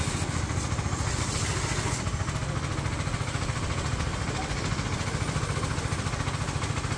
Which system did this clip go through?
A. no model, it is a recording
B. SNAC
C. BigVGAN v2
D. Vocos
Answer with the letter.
A